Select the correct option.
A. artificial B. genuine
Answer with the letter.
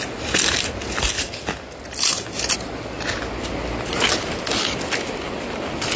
B